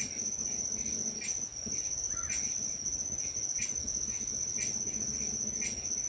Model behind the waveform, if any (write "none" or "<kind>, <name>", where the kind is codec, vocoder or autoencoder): none